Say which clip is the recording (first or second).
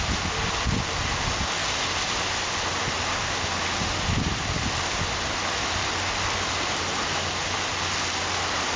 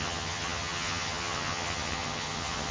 first